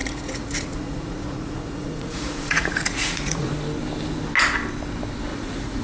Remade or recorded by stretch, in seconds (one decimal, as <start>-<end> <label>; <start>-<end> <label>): 0.0-3.5 remade; 3.5-5.3 recorded; 5.3-5.8 remade